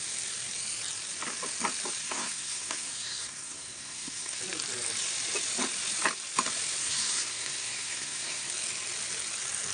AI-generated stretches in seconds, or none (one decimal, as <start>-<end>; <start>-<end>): 2.0-4.4; 6.8-8.5